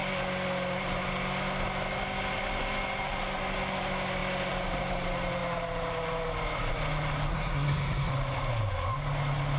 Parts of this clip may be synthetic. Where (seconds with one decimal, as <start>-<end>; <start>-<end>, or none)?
7.3-8.1